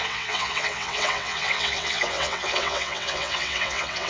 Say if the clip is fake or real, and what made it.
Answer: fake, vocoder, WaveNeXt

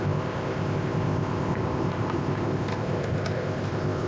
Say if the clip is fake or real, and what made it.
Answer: fake, codec, ZipCodec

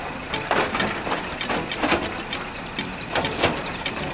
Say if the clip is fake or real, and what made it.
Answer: real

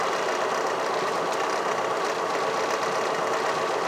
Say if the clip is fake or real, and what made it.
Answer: real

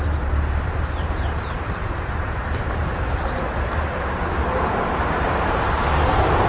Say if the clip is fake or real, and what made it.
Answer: fake, vocoder, BigVGAN v2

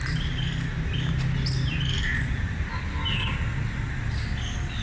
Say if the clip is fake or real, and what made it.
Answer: real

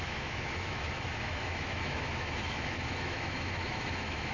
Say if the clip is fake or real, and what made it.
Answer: fake, autoencoder, DAC-VAE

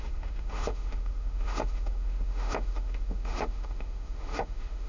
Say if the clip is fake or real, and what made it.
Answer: fake, autoencoder, DAC-VAE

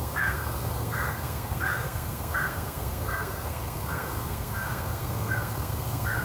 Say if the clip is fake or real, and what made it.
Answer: fake, codec, SNAC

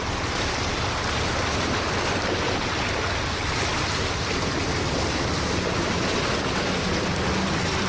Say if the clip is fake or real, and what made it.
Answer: real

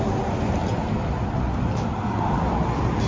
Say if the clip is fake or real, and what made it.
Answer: real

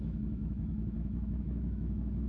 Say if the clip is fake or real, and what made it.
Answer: fake, autoencoder, DAC-VAE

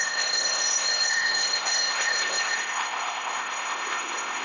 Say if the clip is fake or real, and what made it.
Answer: fake, codec, ZipCodec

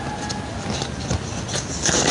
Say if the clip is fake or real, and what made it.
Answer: real